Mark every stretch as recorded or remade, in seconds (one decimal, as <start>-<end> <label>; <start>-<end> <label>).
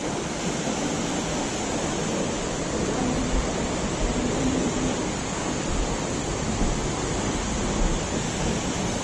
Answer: 0.0-6.8 remade; 6.8-7.7 recorded; 7.7-9.0 remade